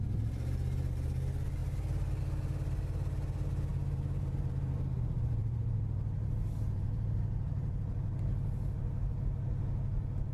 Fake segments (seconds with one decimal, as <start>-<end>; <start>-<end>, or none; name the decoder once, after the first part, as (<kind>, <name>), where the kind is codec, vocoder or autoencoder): 3.7-8.1 (vocoder, BigVGAN v2)